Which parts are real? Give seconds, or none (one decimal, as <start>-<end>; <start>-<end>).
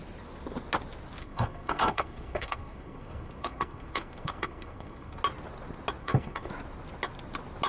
0.0-1.2; 5.2-6.0; 6.5-7.7